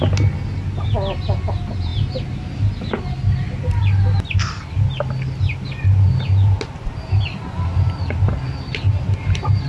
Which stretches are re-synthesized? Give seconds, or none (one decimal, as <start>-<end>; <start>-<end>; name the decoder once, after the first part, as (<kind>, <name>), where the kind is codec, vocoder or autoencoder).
none

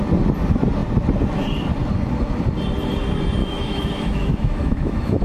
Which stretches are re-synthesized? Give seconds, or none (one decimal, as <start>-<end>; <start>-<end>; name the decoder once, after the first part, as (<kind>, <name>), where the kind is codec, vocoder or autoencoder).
3.4-5.2 (autoencoder, DAC-VAE)

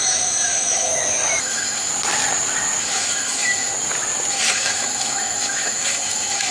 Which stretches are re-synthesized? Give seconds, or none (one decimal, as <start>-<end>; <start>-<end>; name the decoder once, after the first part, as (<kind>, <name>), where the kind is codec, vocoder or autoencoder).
0.0-0.9 (autoencoder, DAC-VAE); 1.4-1.9; 2.8-3.7; 4.3-6.5

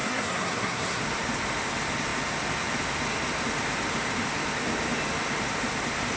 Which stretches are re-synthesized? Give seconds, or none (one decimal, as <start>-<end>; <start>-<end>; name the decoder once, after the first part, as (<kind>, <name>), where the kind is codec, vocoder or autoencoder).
0.0-1.0 (codec, SNAC)

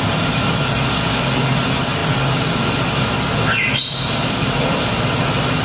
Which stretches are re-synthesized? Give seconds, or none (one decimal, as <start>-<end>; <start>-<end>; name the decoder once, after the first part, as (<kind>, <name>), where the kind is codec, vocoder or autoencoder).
none

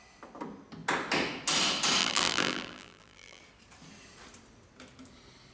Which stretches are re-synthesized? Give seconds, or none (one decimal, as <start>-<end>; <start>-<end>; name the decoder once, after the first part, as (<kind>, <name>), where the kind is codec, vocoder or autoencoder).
2.0-3.4 (vocoder, BigVGAN v2)